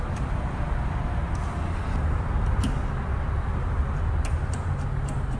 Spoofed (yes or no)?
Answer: no